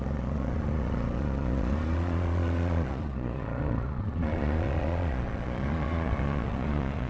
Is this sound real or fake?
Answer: fake